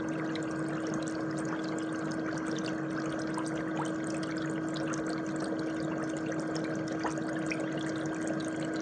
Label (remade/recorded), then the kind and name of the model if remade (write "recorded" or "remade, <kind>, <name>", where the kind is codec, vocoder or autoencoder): recorded